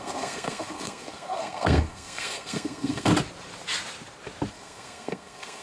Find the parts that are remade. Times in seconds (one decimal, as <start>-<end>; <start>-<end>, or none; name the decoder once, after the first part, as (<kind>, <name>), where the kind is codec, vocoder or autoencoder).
0.0-3.1 (codec, SNAC); 4.5-5.6